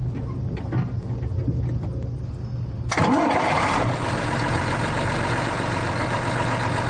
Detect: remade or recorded recorded